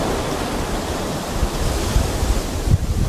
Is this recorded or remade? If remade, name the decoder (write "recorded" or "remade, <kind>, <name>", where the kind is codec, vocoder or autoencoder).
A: recorded